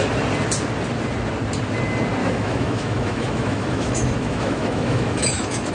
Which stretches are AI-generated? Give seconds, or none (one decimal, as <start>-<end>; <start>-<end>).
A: 2.2-5.7